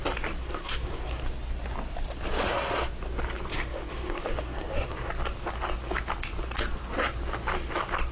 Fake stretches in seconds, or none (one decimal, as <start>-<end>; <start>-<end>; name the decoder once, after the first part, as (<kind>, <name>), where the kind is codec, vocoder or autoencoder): 0.4-1.2 (codec, SNAC); 3.5-5.1